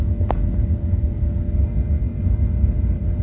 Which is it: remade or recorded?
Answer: recorded